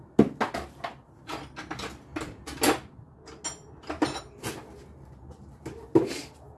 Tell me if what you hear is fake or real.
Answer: real